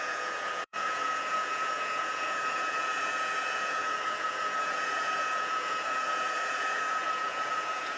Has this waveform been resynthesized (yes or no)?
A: yes